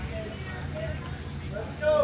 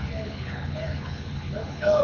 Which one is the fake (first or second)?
second